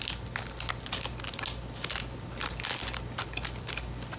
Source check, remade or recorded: recorded